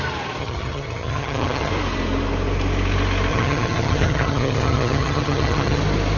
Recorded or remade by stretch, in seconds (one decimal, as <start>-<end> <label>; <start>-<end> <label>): 0.0-0.4 recorded; 0.4-1.7 remade; 1.7-3.3 recorded; 3.3-5.8 remade; 5.8-6.2 recorded